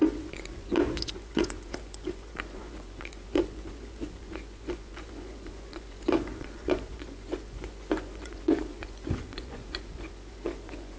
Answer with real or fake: fake